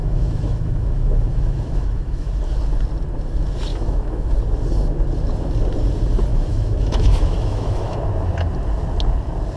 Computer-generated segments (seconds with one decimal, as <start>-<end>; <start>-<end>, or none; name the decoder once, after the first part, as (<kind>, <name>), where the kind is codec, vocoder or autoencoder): 0.0-2.3 (autoencoder, DAC-VAE); 3.7-4.4; 6.3-8.0